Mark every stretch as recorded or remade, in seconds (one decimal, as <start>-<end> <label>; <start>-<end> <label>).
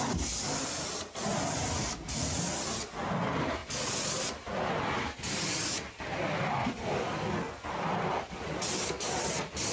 0.0-9.7 recorded